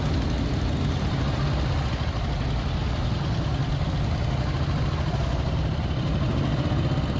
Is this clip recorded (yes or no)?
yes